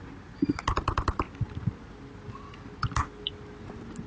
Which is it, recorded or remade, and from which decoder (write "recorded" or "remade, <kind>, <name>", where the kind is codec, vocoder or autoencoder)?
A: recorded